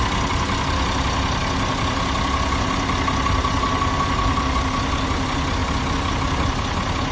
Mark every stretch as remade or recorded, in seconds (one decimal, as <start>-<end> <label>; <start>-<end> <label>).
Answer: 0.0-7.1 recorded